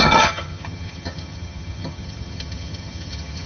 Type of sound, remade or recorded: remade